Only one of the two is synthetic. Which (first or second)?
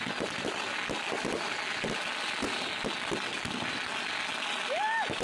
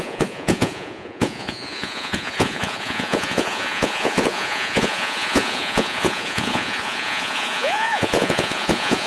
second